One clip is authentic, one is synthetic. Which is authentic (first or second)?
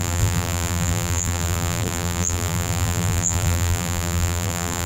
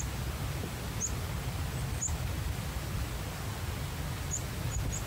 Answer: second